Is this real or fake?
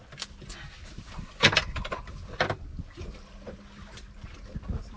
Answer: real